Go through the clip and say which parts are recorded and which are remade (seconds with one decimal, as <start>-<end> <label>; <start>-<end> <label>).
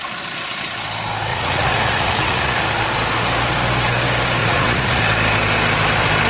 0.0-1.3 recorded; 1.3-2.6 remade; 2.6-4.4 recorded; 4.4-5.0 remade; 5.0-6.3 recorded